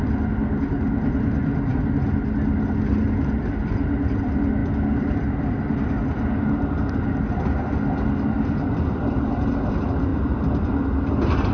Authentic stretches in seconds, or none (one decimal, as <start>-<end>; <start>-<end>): 0.0-10.1; 10.7-11.5